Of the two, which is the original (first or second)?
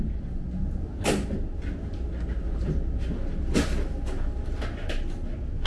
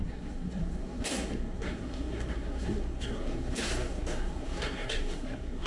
first